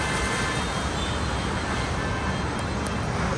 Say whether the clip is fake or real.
real